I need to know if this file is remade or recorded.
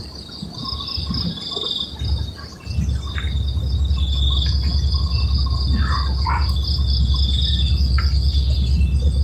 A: recorded